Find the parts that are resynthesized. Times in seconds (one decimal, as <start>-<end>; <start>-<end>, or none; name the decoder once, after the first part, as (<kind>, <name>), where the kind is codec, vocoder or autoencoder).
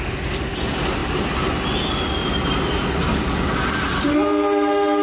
none